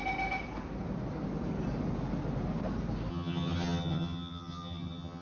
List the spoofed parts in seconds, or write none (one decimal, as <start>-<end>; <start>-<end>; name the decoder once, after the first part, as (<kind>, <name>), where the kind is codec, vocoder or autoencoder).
3.1-5.2 (vocoder, HiFi-GAN)